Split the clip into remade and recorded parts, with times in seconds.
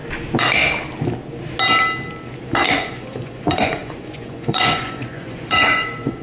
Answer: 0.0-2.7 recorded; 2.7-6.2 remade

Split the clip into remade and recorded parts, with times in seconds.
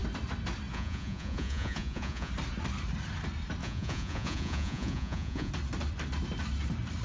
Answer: 0.0-0.7 recorded; 0.7-2.3 remade; 2.3-3.6 recorded; 3.6-5.5 remade; 5.5-7.0 recorded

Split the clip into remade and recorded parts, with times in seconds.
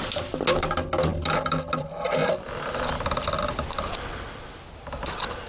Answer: 0.0-5.5 recorded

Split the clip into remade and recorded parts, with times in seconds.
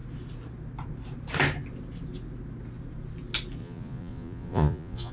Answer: 0.0-3.6 recorded; 3.6-5.1 remade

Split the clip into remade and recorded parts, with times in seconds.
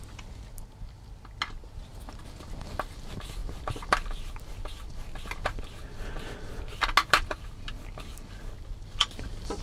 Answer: 0.0-9.6 recorded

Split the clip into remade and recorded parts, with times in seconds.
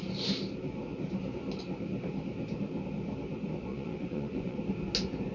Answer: 0.0-3.7 recorded; 3.7-4.6 remade; 4.6-5.3 recorded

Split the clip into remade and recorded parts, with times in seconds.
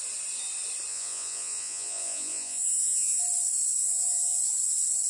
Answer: 0.0-0.9 recorded; 0.9-3.2 remade; 3.2-3.8 recorded; 3.8-4.4 remade; 4.4-5.1 recorded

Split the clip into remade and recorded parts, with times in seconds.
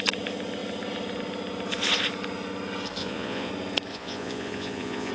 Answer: 0.0-3.0 recorded; 3.0-3.5 remade; 3.5-3.9 recorded; 3.9-5.1 remade